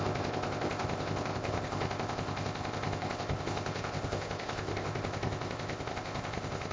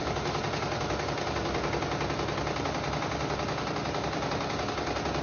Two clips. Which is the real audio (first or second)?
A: second